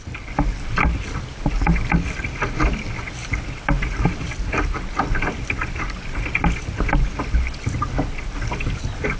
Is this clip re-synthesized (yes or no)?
no